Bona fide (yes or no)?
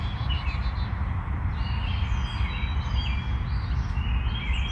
yes